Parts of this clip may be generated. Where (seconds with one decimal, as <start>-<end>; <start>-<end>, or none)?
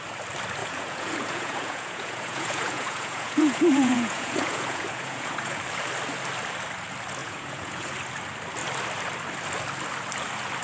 0.6-5.6; 7.2-7.9